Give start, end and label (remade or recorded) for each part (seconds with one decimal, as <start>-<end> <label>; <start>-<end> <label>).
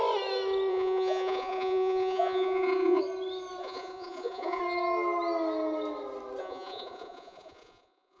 0.0-0.7 recorded; 0.7-3.0 remade; 3.0-3.6 recorded; 3.6-4.6 remade; 4.6-6.4 recorded; 6.4-8.2 remade